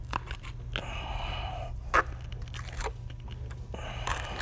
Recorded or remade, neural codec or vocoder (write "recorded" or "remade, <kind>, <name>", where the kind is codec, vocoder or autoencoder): recorded